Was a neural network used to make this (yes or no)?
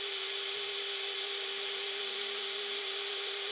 yes